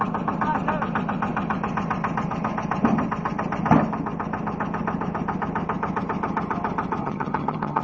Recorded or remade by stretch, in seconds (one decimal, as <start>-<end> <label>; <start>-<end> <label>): 0.0-7.0 recorded; 7.0-7.8 remade